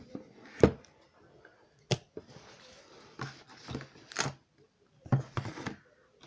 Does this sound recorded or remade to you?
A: recorded